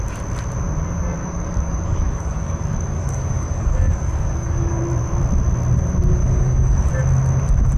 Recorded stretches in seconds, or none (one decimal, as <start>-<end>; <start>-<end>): 0.0-1.2; 4.8-6.2; 6.9-7.8